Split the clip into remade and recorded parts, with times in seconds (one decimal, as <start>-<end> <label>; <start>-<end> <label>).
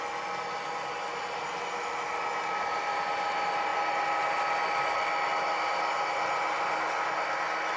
0.0-7.8 recorded